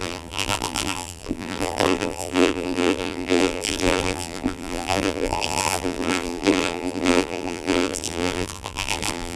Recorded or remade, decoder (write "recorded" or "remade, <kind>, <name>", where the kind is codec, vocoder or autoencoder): remade, vocoder, BigVGAN v2